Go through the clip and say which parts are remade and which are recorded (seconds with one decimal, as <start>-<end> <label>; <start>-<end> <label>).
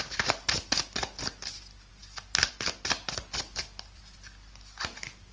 0.0-5.3 recorded